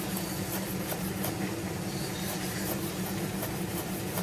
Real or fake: real